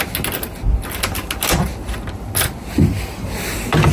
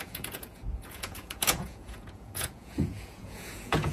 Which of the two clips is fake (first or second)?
second